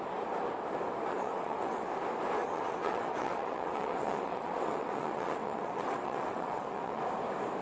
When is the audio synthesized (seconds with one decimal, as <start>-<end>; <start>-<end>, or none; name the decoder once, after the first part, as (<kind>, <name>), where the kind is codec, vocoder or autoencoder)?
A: 1.1-1.8 (vocoder, WaveNeXt); 2.4-7.0